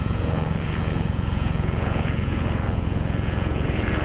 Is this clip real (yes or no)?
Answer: no